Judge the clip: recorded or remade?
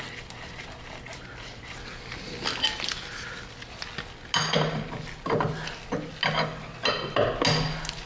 recorded